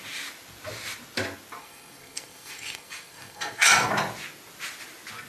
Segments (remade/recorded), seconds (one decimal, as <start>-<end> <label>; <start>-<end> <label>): 0.0-1.6 recorded; 1.6-3.9 remade; 3.9-5.3 recorded